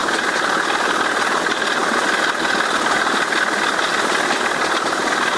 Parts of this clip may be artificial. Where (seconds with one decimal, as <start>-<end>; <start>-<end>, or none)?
none